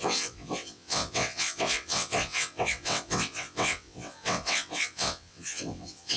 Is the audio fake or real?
fake